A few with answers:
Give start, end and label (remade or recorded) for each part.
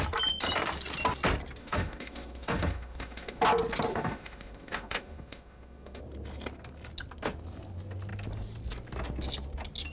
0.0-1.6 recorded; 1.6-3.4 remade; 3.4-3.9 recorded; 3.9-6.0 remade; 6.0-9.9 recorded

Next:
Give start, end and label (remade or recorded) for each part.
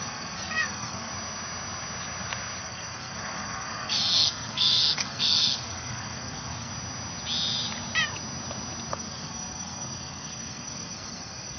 0.0-1.1 remade; 1.1-2.6 recorded; 2.6-6.7 remade; 6.7-8.9 recorded; 8.9-11.6 remade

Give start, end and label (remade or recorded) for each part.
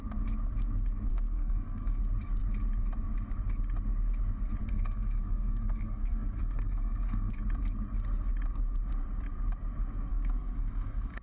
0.0-1.1 recorded; 1.1-2.0 remade; 2.0-4.6 recorded; 4.6-7.3 remade; 7.3-10.1 recorded; 10.1-11.2 remade